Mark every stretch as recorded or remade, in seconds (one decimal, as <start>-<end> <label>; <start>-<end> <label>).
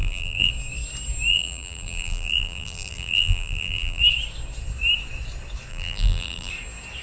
0.0-0.5 remade; 0.5-1.3 recorded; 1.3-4.0 remade; 4.0-5.7 recorded; 5.7-6.5 remade; 6.5-7.0 recorded